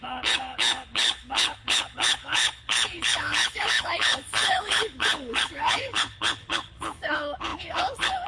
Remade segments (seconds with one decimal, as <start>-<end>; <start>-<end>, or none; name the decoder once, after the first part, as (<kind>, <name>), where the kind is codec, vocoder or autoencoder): 0.0-8.3 (codec, HILCodec)